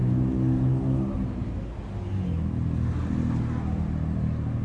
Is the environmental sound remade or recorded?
recorded